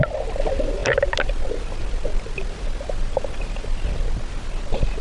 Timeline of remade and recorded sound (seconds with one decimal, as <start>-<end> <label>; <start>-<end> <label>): 0.0-5.0 recorded